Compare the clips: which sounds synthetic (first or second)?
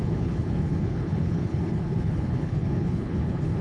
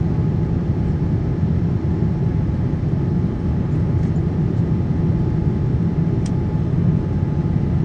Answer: first